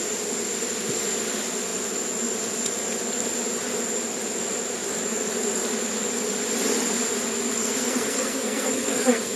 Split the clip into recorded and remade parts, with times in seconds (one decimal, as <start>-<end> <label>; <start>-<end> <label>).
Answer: 0.0-7.6 recorded; 7.6-9.4 remade